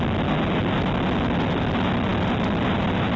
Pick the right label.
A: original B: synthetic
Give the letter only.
A